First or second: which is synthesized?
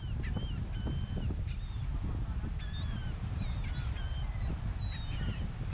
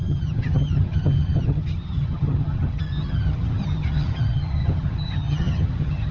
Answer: second